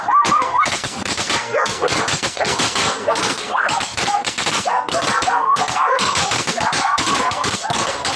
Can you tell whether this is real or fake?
fake